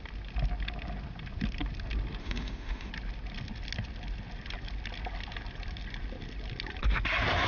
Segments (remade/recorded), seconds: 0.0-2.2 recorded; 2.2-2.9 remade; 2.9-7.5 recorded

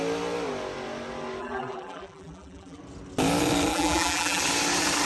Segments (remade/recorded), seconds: 0.0-1.4 recorded; 1.4-2.8 remade; 2.8-3.7 recorded; 3.7-4.4 remade; 4.4-5.1 recorded

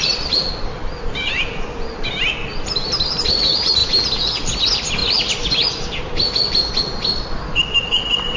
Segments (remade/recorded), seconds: 0.0-8.4 recorded

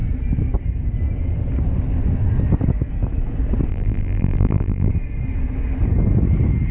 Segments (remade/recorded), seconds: 0.0-3.7 recorded; 3.7-4.9 remade; 4.9-6.7 recorded